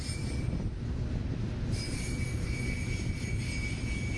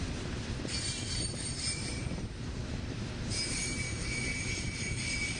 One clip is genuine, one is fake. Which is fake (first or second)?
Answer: second